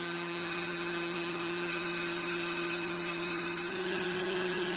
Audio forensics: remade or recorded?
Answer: remade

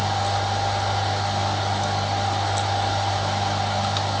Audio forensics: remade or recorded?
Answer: recorded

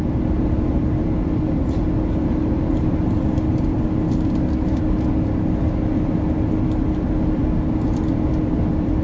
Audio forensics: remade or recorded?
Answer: recorded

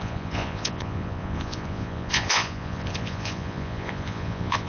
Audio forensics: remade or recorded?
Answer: remade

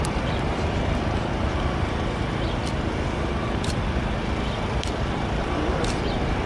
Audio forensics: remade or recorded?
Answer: recorded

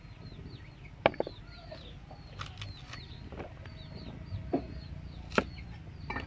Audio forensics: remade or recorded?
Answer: recorded